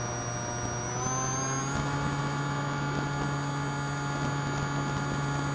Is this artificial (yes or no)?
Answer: no